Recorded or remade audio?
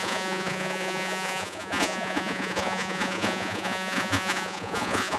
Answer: remade